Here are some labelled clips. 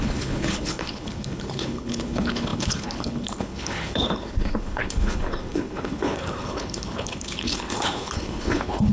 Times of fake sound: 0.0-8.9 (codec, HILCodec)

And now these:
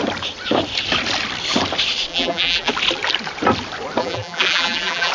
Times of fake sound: 2.1-2.7 (vocoder, BigVGAN v2); 4.0-5.1